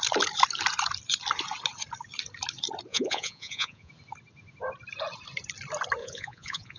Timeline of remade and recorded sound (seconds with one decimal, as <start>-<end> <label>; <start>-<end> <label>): 0.0-2.9 recorded; 2.9-3.9 remade; 3.9-6.0 recorded; 6.0-6.8 remade